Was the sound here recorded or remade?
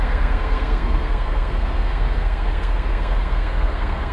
remade